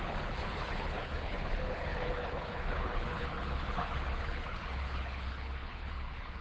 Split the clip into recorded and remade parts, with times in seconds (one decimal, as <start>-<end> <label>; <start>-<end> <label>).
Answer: 0.0-6.4 remade